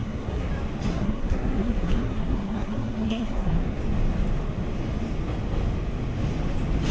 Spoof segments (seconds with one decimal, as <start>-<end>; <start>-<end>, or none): 0.0-0.5; 0.9-3.8